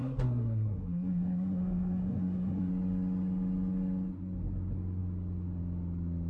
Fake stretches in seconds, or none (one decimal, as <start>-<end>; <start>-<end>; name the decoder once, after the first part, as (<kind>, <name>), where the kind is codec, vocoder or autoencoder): 0.0-2.7 (codec, SNAC)